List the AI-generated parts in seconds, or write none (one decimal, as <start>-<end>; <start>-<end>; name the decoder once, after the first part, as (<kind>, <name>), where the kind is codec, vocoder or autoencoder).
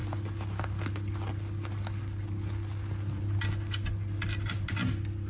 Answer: none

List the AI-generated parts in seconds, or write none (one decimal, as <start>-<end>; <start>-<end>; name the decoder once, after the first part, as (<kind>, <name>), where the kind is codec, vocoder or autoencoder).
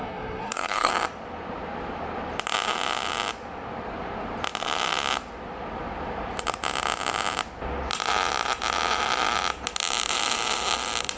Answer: 0.0-0.9 (codec, SNAC)